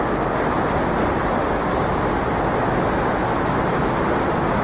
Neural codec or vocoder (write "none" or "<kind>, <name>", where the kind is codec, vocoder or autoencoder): none